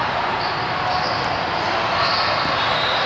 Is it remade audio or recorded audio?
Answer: recorded